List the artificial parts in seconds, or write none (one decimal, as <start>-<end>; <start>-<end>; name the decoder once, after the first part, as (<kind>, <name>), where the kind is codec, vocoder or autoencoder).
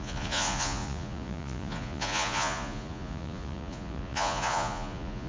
0.0-5.3 (vocoder, Vocos)